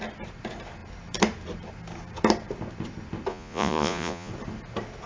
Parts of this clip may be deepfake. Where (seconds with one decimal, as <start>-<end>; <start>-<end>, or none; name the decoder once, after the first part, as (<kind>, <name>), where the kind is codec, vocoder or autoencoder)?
3.3-4.3 (vocoder, Vocos)